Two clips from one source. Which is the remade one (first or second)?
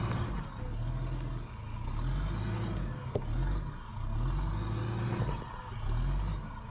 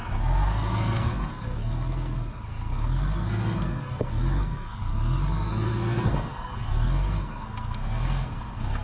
second